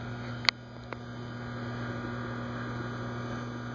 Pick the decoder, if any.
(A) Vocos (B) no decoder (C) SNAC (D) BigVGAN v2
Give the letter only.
B